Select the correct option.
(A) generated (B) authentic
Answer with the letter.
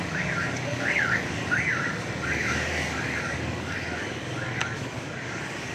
A